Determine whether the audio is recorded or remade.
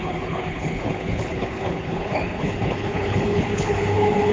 remade